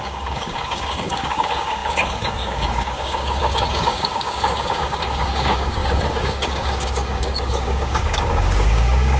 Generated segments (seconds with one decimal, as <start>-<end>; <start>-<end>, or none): 0.0-9.2